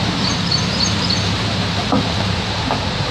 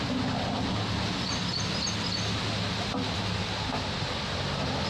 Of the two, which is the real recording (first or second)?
second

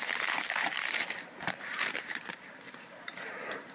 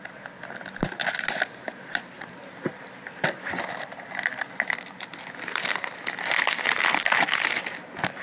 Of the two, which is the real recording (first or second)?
second